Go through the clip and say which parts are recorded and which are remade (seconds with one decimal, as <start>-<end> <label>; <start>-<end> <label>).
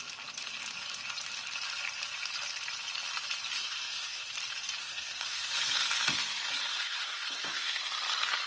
0.0-3.5 recorded; 3.5-4.3 remade; 4.3-4.8 recorded; 4.8-5.5 remade; 5.5-6.7 recorded; 6.7-7.8 remade; 7.8-8.5 recorded